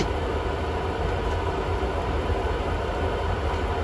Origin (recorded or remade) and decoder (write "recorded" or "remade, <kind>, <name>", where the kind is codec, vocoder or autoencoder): recorded